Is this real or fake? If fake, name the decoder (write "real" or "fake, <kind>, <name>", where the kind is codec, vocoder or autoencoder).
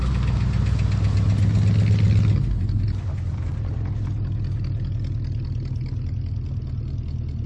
real